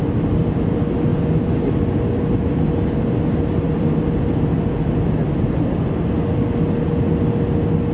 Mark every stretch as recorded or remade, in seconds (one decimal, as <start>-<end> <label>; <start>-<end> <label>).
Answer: 0.0-7.9 recorded